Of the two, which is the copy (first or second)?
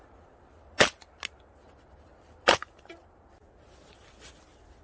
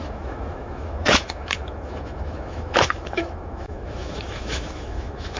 second